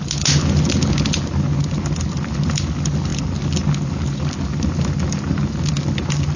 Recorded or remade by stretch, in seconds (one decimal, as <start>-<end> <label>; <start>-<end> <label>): 0.0-6.4 recorded